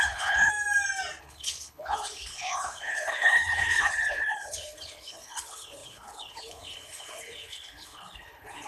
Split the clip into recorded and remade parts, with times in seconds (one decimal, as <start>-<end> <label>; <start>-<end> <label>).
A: 0.0-0.5 remade; 0.5-1.2 recorded; 1.2-8.7 remade